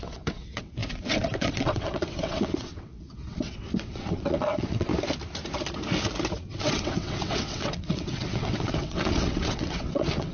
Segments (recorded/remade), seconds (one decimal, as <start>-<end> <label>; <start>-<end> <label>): 0.0-4.9 remade; 4.9-6.6 recorded; 6.6-10.3 remade